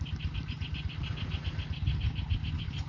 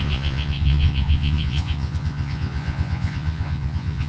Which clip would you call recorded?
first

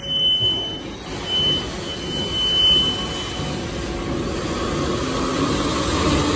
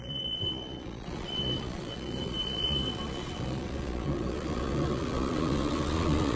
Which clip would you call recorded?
first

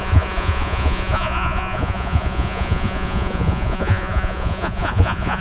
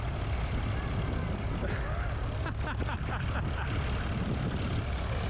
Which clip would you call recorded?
second